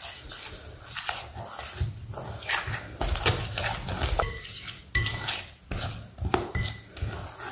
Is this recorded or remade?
recorded